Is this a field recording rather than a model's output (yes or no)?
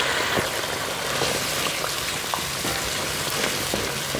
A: yes